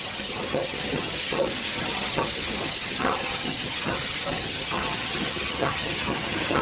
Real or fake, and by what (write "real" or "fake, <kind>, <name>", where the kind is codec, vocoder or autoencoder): fake, vocoder, HiFi-GAN